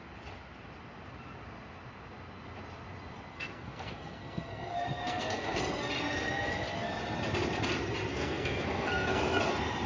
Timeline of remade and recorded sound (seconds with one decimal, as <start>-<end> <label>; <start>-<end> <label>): 0.0-3.3 recorded; 3.3-5.6 remade; 5.6-8.1 recorded; 8.1-9.4 remade; 9.4-9.9 recorded